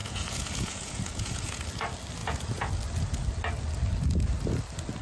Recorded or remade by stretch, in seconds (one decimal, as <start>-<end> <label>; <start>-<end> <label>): 0.0-1.6 remade; 1.6-2.2 recorded; 2.2-2.7 remade; 2.7-5.0 recorded